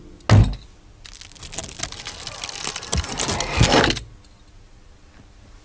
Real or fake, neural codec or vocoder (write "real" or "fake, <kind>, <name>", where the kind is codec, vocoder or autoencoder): real